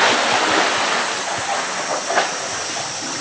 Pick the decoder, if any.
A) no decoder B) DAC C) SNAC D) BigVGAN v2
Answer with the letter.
A